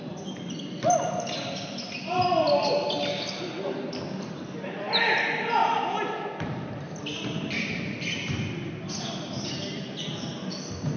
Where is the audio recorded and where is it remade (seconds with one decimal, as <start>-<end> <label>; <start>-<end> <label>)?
0.0-11.0 recorded